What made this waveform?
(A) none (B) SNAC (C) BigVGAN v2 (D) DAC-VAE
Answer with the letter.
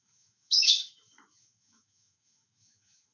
D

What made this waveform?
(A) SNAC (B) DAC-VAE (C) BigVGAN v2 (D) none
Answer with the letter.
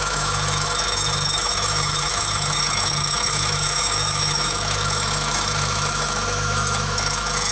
B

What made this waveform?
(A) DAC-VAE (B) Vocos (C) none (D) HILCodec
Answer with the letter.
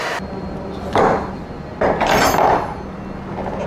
C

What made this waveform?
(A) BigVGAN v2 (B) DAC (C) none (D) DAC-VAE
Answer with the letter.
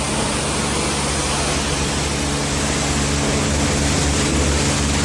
C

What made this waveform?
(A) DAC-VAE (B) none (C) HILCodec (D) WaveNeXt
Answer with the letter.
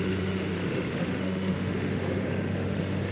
A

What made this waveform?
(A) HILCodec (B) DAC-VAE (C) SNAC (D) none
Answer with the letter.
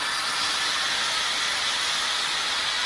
D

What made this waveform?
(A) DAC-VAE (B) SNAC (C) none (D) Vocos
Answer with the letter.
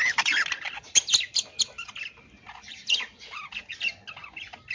C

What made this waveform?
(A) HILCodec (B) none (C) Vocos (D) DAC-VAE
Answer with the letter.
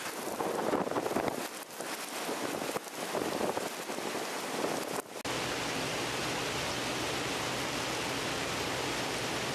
B